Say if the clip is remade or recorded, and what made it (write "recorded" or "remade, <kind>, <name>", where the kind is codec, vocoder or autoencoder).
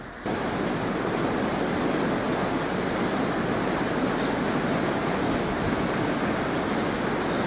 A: recorded